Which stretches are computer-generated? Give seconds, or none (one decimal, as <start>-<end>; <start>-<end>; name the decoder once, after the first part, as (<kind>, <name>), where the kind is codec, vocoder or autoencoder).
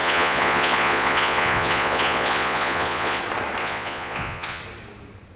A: 0.0-3.2 (vocoder, Vocos); 3.6-4.6